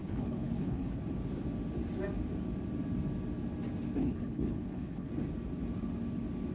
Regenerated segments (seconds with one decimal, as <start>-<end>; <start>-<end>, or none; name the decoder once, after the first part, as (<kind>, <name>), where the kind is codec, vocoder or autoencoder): 0.0-1.0 (codec, HILCodec); 4.0-5.1